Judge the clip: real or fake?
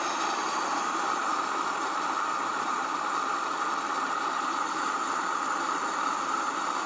fake